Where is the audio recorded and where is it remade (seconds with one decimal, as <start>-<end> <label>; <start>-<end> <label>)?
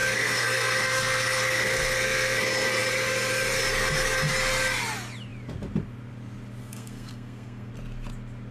0.0-2.4 remade; 2.4-6.6 recorded; 6.6-7.7 remade; 7.7-8.5 recorded